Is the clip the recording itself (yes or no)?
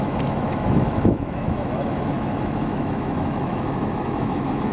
no